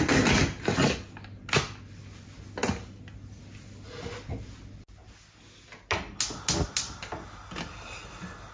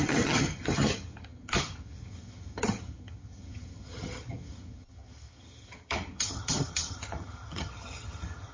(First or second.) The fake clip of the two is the second